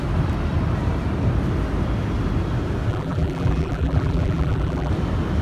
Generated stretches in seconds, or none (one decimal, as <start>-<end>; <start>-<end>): 2.9-4.9